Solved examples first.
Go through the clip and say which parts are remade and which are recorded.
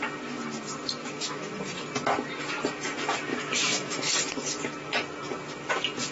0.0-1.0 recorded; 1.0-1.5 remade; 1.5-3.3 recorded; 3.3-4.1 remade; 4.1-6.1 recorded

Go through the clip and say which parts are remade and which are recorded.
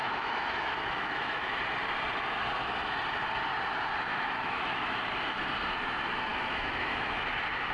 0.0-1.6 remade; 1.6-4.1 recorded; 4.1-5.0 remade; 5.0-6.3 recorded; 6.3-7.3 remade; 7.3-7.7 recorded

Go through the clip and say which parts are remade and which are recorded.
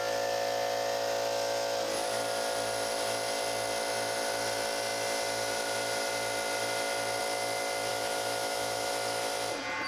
0.0-7.9 recorded; 7.9-8.9 remade; 8.9-9.9 recorded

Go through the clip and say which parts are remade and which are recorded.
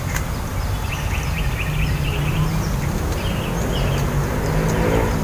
0.0-5.2 recorded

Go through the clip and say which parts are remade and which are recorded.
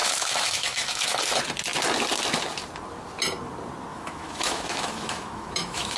0.0-1.2 remade; 1.2-3.9 recorded; 3.9-6.0 remade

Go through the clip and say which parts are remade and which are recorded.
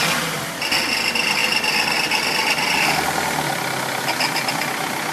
0.0-5.1 recorded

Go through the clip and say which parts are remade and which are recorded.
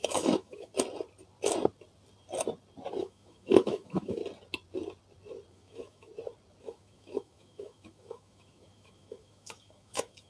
0.0-0.7 remade; 0.7-3.0 recorded; 3.0-4.2 remade; 4.2-5.5 recorded; 5.5-6.1 remade; 6.1-6.6 recorded; 6.6-10.3 remade